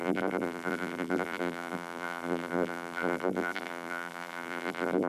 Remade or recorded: remade